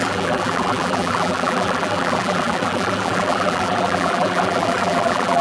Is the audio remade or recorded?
remade